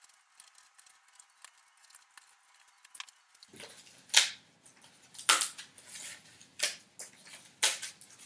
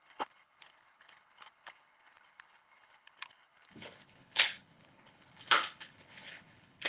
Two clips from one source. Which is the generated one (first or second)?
second